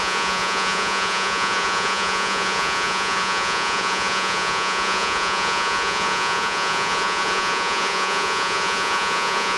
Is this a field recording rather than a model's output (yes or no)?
no